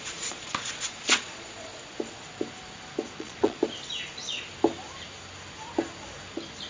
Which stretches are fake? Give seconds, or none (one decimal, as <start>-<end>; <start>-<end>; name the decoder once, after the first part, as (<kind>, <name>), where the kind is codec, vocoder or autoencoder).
0.0-1.7 (vocoder, Vocos); 3.2-3.6